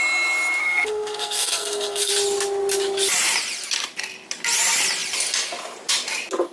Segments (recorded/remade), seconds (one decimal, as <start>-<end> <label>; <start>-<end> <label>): 0.0-0.6 recorded; 0.6-2.1 remade; 2.1-6.5 recorded